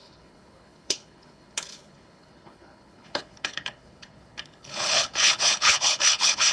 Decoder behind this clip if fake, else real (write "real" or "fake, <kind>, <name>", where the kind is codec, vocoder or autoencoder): fake, codec, HILCodec